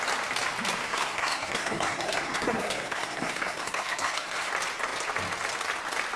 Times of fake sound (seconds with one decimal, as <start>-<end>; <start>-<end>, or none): 0.8-4.5